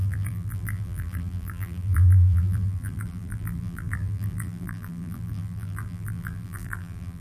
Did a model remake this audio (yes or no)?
yes